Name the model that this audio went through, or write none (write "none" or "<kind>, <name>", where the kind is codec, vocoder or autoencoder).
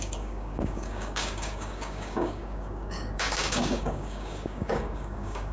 codec, DAC